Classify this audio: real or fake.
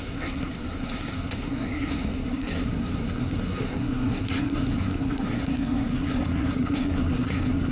fake